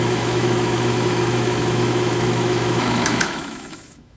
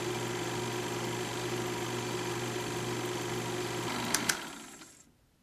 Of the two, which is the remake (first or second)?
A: first